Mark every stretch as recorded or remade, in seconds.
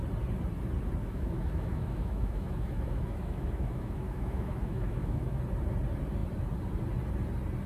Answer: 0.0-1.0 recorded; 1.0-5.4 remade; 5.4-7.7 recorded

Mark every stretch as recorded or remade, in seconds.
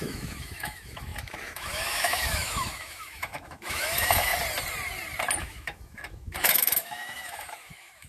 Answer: 0.0-4.3 remade; 4.3-5.4 recorded; 5.4-8.1 remade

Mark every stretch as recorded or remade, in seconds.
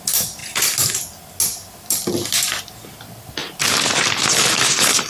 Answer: 0.0-5.1 recorded